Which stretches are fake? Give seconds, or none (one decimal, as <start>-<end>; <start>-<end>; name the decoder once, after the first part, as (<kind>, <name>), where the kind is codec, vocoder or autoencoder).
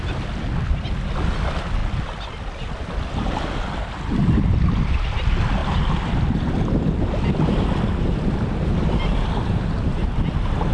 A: none